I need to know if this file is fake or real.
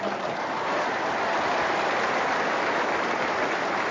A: real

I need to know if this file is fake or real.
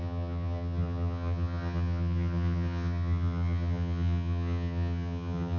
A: fake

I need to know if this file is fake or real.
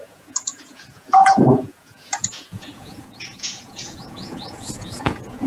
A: fake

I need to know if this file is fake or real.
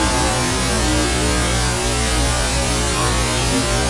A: real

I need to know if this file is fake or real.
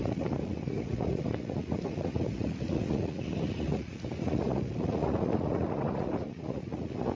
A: fake